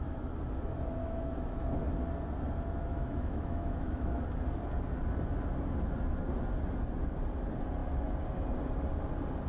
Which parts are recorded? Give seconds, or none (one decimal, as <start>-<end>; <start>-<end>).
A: 0.0-1.0; 1.7-2.9; 4.2-9.5